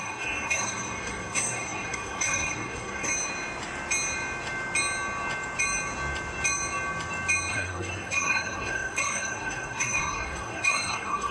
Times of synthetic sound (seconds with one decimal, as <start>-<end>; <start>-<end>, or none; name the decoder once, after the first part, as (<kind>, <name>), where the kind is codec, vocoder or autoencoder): 0.0-3.1 (codec, SNAC); 7.5-11.3